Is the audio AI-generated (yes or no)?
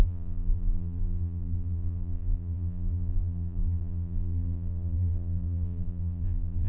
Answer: yes